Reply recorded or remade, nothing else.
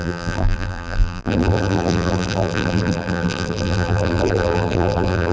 remade